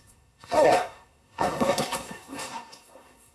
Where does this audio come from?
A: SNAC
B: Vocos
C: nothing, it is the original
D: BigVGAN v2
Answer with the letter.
A